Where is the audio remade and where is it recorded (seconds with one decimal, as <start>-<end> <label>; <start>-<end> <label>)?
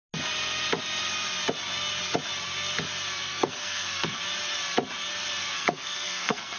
0.0-3.2 recorded; 3.2-4.2 remade; 4.2-5.4 recorded; 5.4-6.6 remade